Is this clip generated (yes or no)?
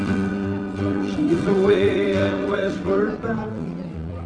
yes